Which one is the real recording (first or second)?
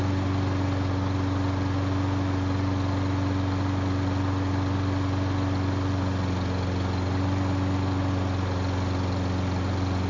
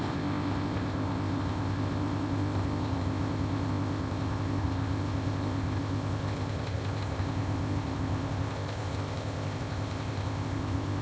first